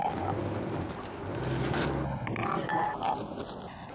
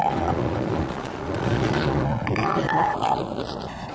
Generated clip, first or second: second